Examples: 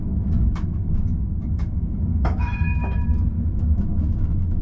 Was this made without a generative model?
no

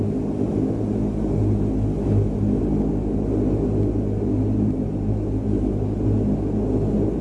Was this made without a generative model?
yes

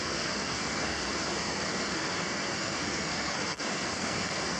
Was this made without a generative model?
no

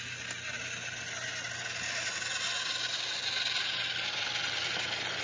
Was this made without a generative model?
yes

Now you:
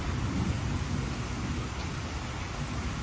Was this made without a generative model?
yes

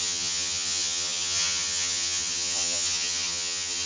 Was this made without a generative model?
no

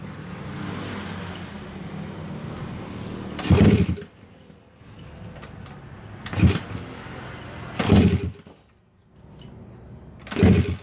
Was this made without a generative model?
yes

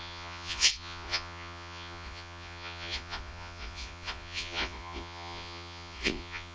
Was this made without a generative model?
no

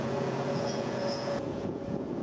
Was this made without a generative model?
no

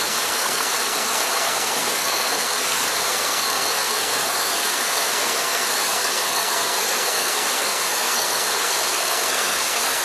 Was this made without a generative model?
no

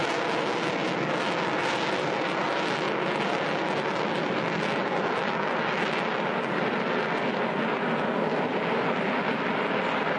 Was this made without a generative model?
yes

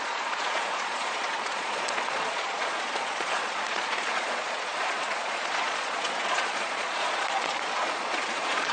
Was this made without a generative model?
no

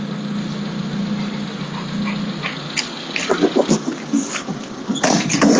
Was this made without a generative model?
yes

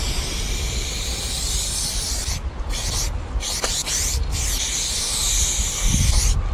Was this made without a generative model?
yes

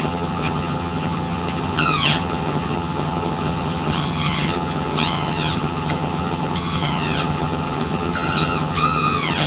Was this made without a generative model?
no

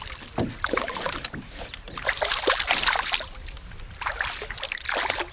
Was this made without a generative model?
yes